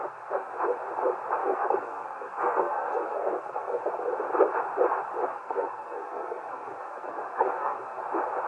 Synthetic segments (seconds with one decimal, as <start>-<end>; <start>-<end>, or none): 0.0-0.5; 1.4-3.8; 5.3-8.0